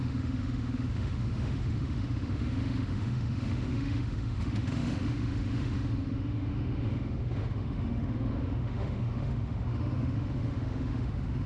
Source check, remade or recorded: remade